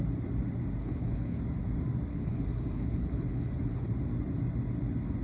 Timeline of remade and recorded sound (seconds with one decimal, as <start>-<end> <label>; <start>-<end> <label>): 0.0-0.8 recorded; 0.8-1.4 remade; 1.4-2.1 recorded; 2.1-3.9 remade; 3.9-5.2 recorded